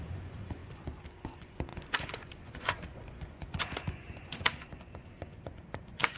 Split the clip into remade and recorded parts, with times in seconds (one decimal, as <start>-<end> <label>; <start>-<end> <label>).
0.0-6.2 remade